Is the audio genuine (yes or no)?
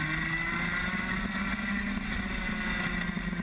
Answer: yes